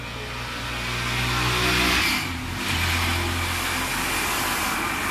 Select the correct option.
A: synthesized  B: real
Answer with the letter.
B